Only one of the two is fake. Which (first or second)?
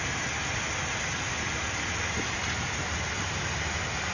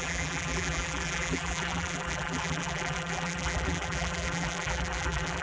second